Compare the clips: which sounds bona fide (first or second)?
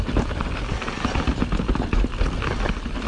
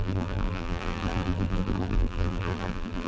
first